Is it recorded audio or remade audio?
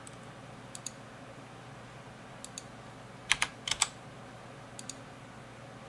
recorded